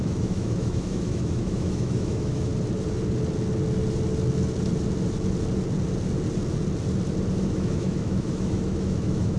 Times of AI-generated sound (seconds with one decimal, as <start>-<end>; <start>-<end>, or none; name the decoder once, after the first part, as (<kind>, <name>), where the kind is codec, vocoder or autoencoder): 0.0-2.5 (autoencoder, DAC-VAE); 7.4-9.4